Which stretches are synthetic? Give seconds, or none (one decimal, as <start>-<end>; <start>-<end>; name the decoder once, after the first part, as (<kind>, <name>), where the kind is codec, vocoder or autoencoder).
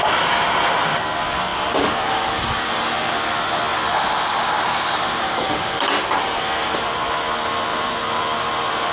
1.5-3.1 (vocoder, BigVGAN v2); 3.7-7.1; 7.7-8.9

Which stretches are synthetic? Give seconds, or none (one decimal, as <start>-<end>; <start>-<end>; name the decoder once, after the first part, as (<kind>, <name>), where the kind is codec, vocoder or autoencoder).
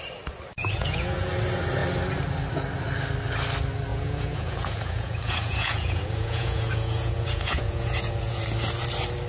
0.6-1.3 (vocoder, Vocos); 3.9-8.4